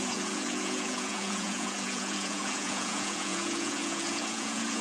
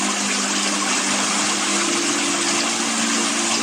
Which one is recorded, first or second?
second